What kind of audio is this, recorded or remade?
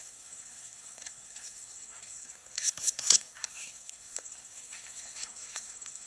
remade